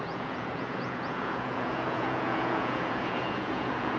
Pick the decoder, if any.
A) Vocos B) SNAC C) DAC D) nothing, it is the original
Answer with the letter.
A